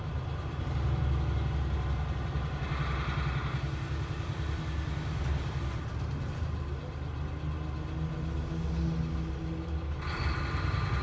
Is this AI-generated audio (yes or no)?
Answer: no